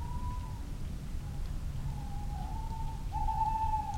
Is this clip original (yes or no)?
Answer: yes